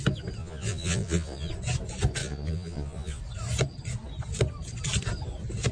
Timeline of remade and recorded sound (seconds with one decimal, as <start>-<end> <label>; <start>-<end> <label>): 0.0-0.4 recorded; 0.4-1.5 remade; 1.5-2.2 recorded; 2.2-3.2 remade; 3.2-5.7 recorded